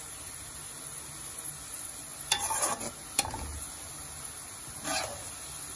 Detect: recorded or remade recorded